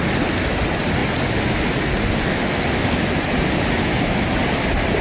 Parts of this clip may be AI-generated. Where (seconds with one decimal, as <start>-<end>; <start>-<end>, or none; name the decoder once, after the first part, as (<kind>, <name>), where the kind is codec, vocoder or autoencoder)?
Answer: none